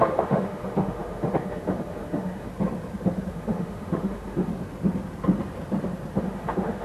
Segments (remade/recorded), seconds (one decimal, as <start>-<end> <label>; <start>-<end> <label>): 0.0-2.5 remade; 2.5-3.3 recorded; 3.3-4.5 remade; 4.5-6.2 recorded; 6.2-6.8 remade